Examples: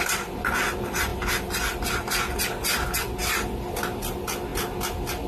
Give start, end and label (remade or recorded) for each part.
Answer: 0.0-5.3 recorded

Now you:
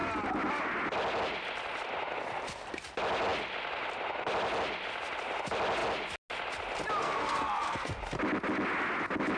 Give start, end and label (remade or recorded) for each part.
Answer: 0.0-7.0 recorded; 7.0-8.0 remade; 8.0-9.4 recorded